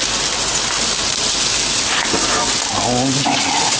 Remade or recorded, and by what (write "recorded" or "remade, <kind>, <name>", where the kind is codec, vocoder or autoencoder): recorded